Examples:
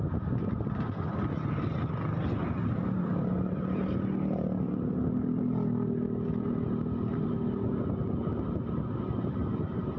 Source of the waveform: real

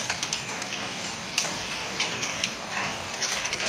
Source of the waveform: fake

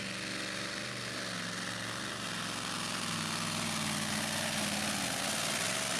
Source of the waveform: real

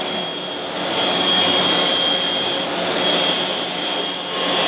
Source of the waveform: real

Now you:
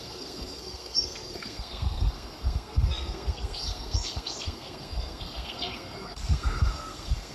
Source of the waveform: fake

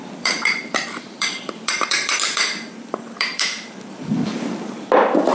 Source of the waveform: fake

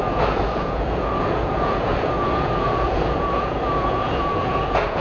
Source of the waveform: fake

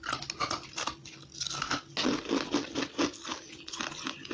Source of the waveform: real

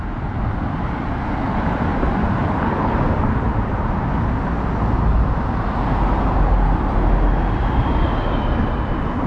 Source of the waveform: real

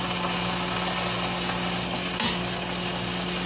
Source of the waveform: real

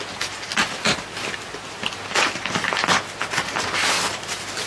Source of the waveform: real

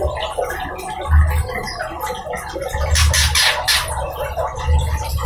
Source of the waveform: real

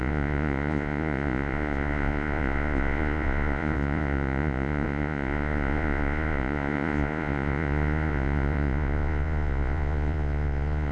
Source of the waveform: fake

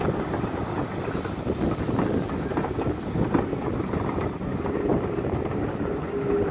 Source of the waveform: real